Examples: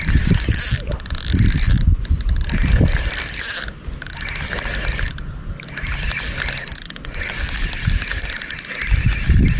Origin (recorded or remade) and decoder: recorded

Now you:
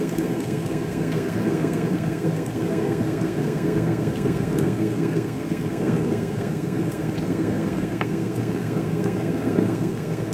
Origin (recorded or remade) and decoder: remade, codec, SNAC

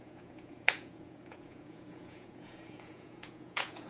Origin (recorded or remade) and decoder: remade, vocoder, Vocos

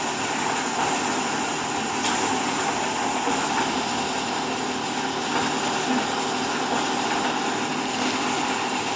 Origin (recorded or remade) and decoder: recorded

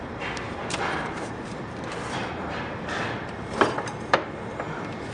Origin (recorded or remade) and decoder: remade, vocoder, BigVGAN v2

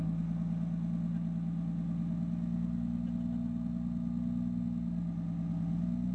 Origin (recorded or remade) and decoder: recorded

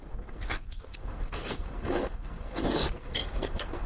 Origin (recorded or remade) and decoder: remade, codec, SNAC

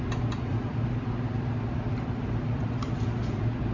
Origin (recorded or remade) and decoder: remade, vocoder, BigVGAN v2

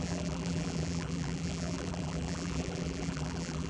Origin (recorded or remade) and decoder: remade, vocoder, BigVGAN v2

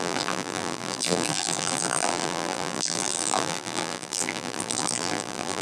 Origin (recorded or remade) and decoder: remade, vocoder, BigVGAN v2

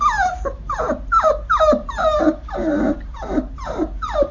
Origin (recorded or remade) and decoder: remade, vocoder, BigVGAN v2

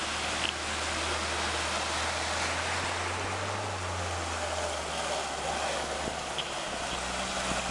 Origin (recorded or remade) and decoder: recorded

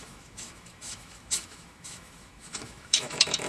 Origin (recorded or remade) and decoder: remade, autoencoder, DAC-VAE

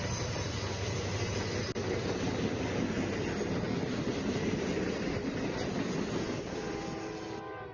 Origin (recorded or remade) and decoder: recorded